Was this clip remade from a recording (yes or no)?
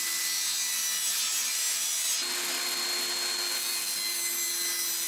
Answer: no